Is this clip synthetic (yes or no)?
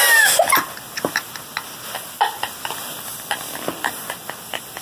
no